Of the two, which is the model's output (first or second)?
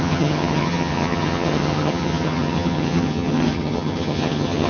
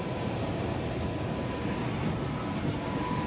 first